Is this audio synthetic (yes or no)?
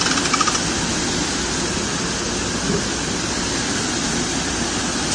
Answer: no